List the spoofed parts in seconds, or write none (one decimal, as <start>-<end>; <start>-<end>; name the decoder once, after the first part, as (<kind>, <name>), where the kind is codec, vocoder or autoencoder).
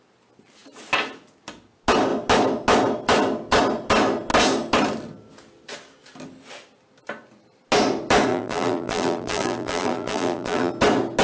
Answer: 8.3-10.7 (vocoder, BigVGAN v2)